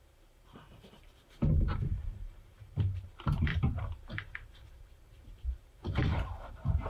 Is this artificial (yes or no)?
yes